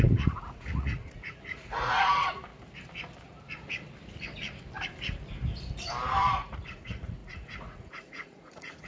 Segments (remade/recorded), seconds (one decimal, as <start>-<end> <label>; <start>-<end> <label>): 0.0-2.5 remade; 2.5-6.2 recorded; 6.2-8.9 remade